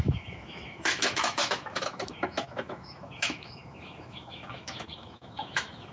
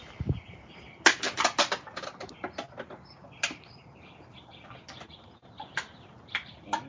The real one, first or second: second